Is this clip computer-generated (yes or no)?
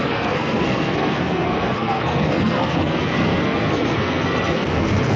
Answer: yes